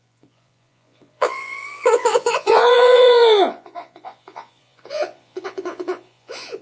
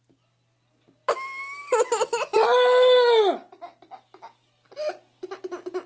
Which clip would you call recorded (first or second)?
second